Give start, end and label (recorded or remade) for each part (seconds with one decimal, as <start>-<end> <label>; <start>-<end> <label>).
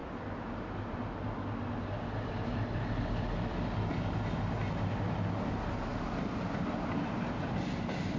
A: 0.0-4.2 remade; 4.2-8.2 recorded